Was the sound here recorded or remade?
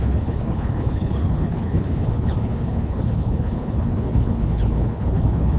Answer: remade